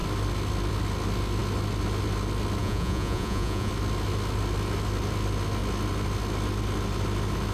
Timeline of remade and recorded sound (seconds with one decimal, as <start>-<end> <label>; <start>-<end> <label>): 0.0-2.6 recorded; 2.6-3.7 remade; 3.7-7.5 recorded